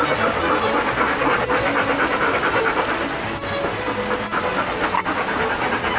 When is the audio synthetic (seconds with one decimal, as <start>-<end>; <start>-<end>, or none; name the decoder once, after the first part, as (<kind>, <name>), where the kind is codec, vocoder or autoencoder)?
none